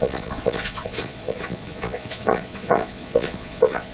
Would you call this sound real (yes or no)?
no